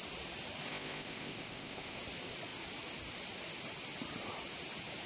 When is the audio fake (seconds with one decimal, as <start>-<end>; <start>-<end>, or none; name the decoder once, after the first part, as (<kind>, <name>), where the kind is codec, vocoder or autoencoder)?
0.7-2.0 (codec, ZipCodec)